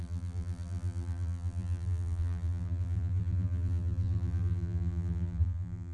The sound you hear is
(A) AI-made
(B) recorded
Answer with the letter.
A